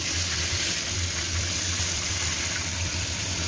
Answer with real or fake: fake